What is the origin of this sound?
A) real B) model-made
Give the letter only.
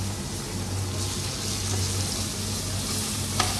A